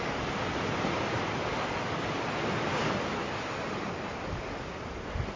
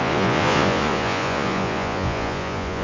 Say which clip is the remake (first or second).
second